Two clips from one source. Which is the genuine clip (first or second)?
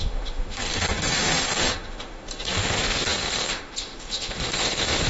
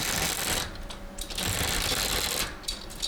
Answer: second